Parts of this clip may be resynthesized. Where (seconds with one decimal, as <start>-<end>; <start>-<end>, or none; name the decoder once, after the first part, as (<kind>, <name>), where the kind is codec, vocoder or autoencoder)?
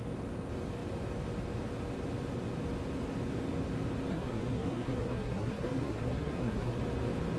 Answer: 4.1-6.8 (codec, SNAC)